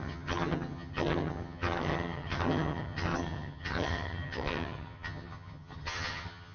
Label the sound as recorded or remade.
remade